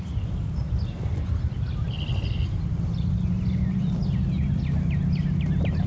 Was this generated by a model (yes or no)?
no